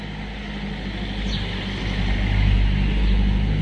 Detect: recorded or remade recorded